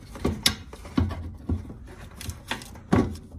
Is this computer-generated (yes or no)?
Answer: no